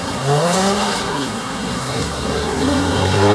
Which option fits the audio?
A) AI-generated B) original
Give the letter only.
A